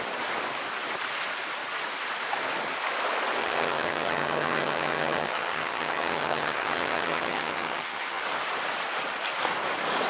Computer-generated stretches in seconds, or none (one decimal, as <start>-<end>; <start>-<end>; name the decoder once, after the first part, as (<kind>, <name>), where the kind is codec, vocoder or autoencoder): 3.4-8.2 (vocoder, HiFi-GAN)